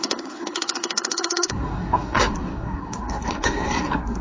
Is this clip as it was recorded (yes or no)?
no